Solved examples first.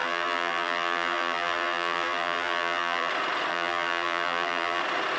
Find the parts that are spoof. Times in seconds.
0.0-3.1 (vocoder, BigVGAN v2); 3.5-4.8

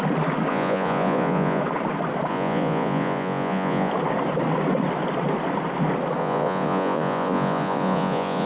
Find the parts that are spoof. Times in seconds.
0.5-1.6 (vocoder, Vocos); 2.3-3.9; 6.2-8.5

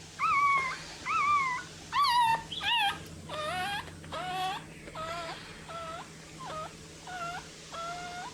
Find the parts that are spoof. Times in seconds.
none

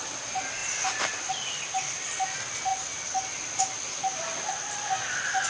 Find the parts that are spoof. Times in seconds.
none

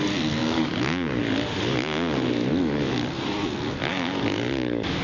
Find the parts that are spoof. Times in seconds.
0.4-1.2 (codec, DAC); 3.9-5.0